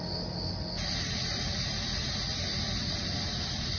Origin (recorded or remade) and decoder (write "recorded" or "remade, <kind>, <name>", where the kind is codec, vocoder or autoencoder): recorded